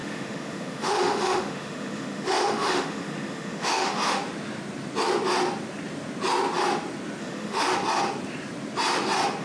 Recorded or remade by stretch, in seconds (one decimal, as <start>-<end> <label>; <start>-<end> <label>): 0.0-4.2 remade; 4.2-7.2 recorded; 7.2-7.7 remade; 7.7-9.4 recorded